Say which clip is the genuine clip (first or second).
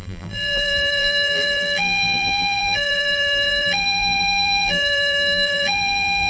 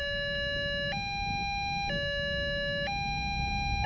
second